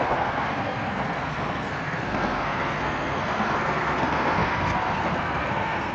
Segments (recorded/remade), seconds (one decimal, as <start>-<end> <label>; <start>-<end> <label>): 0.0-5.9 remade